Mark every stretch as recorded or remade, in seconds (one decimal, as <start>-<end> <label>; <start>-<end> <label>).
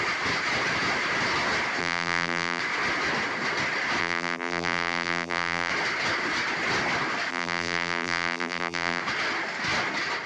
0.0-1.8 recorded; 1.8-2.6 remade; 2.6-4.0 recorded; 4.0-5.7 remade; 5.7-7.3 recorded; 7.3-9.0 remade; 9.0-10.3 recorded